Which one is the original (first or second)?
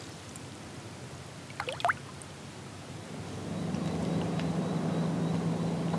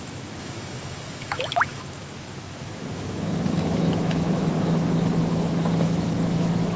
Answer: first